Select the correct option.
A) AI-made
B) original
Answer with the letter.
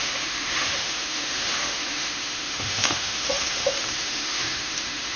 A